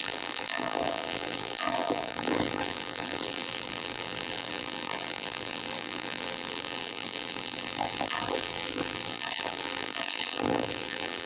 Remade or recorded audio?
remade